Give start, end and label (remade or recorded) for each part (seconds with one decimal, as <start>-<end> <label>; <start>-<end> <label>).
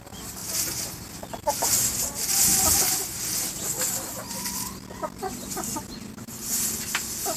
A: 0.0-7.4 recorded